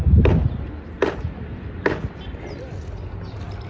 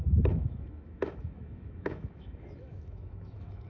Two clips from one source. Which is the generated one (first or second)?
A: second